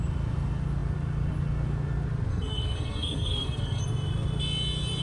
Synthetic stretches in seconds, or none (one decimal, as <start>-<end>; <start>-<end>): 2.3-3.8

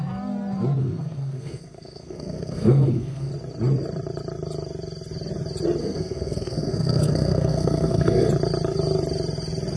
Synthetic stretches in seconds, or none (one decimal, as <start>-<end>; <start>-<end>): 0.8-3.3; 5.8-8.3

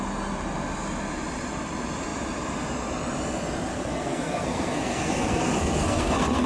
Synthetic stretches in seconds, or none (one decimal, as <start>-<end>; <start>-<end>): 3.7-6.5

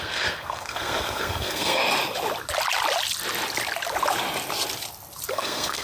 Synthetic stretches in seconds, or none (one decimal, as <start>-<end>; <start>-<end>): 0.0-1.8; 5.3-5.8